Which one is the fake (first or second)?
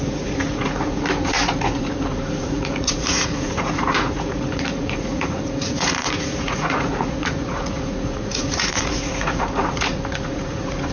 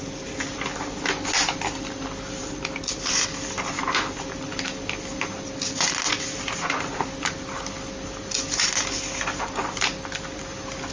first